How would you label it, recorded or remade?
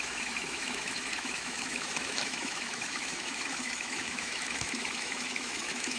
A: remade